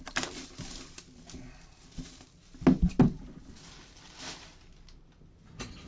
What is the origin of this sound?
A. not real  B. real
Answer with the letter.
B